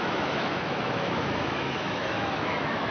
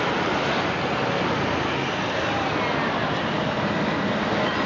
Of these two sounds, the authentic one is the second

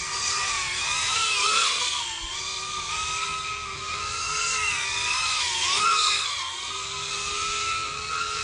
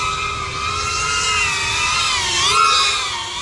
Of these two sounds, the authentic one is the second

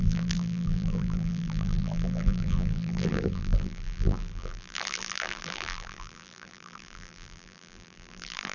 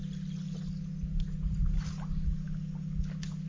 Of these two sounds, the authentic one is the second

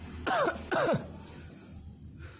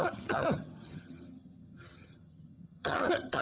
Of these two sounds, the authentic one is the first